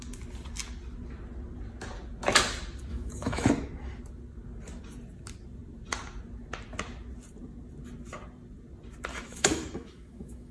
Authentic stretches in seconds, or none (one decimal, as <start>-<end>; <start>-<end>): 0.0-2.9; 3.5-9.1